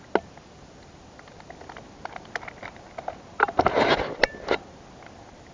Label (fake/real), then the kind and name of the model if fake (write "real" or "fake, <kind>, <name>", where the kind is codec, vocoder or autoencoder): real